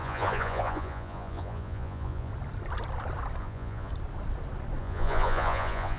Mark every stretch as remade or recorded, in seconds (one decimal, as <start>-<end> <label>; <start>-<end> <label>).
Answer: 0.0-2.3 remade; 2.3-3.4 recorded; 3.4-3.9 remade; 3.9-4.8 recorded; 4.8-6.0 remade